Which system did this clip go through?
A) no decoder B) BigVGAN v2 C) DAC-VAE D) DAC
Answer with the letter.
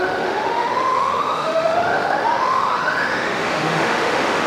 C